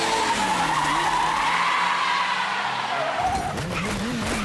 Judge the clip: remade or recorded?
recorded